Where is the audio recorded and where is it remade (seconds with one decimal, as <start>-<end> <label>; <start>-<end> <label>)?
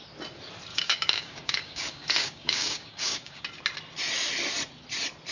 0.0-0.7 recorded; 0.7-3.4 remade; 3.4-5.3 recorded